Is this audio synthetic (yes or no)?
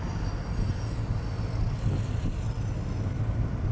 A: no